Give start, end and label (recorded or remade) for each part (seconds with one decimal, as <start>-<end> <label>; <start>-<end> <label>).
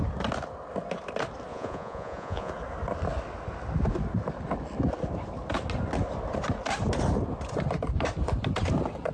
0.0-1.5 recorded; 1.5-2.5 remade; 2.5-9.1 recorded